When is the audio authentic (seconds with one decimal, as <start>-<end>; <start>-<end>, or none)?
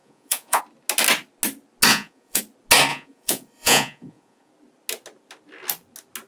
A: 0.6-1.9; 2.4-2.9; 4.5-6.3